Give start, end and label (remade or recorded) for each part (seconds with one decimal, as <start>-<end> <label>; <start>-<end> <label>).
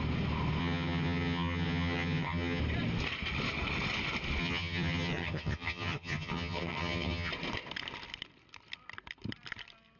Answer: 0.0-0.6 recorded; 0.6-2.6 remade; 2.6-4.4 recorded; 4.4-7.3 remade; 7.3-10.0 recorded